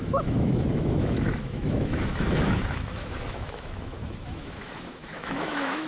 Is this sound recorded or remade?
remade